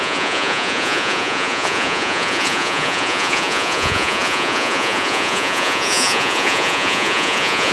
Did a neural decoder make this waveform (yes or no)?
yes